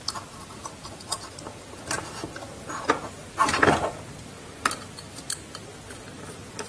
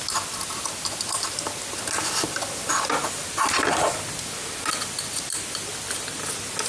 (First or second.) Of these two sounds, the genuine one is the second